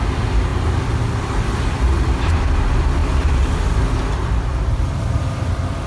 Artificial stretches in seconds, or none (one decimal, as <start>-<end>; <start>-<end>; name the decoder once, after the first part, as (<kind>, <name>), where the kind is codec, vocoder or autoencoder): 0.0-5.9 (vocoder, BigVGAN v2)

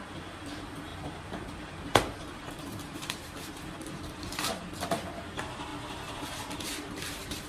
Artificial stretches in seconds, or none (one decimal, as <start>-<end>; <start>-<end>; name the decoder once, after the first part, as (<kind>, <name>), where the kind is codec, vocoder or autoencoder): 0.0-5.7 (vocoder, BigVGAN v2); 6.2-7.5

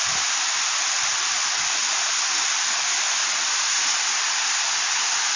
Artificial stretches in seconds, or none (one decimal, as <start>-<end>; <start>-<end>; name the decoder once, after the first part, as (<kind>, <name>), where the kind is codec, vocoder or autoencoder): 0.0-5.4 (vocoder, BigVGAN v2)

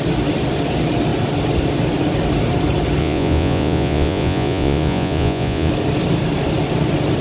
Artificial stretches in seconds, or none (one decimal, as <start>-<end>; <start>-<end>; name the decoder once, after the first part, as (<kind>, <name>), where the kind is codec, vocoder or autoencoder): 3.0-5.7 (vocoder, Vocos)

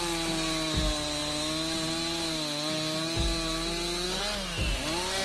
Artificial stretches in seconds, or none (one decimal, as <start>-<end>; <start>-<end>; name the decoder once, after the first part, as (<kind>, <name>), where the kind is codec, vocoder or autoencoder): none